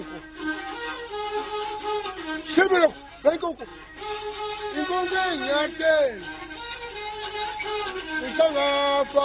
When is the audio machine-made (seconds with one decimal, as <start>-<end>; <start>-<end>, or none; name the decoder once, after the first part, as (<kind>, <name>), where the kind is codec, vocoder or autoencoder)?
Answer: none